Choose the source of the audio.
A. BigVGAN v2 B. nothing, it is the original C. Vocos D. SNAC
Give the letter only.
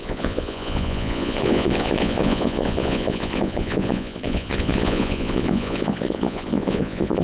C